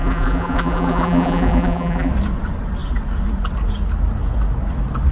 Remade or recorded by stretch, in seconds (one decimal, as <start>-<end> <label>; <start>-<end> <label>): 0.0-2.1 remade; 2.1-5.1 recorded